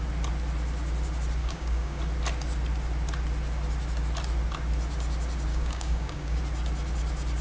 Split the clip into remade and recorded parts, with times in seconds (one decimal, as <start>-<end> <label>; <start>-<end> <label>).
0.0-1.4 recorded; 1.4-2.0 remade; 2.0-5.5 recorded; 5.5-6.4 remade; 6.4-7.4 recorded